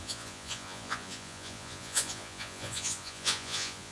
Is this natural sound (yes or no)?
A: no